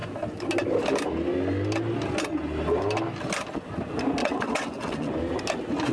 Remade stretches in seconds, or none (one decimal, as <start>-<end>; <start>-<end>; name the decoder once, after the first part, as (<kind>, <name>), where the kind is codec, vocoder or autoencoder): 4.2-5.1 (vocoder, WaveNeXt)